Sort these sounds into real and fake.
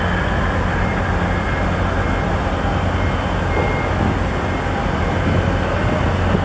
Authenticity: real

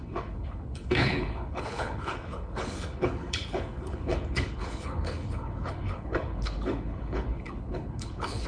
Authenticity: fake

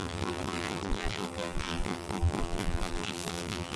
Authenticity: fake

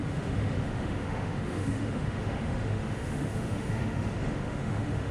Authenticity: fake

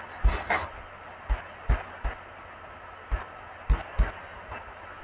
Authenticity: real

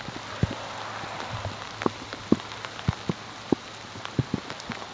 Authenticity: real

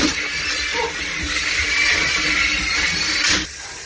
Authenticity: fake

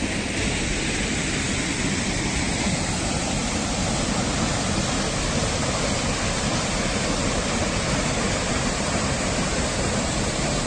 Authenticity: real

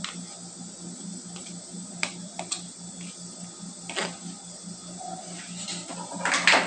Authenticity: real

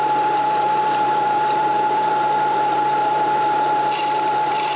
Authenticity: fake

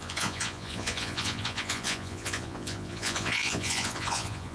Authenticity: fake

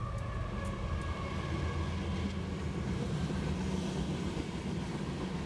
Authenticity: real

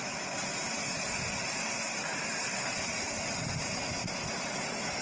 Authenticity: real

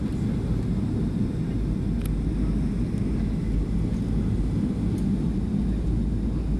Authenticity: real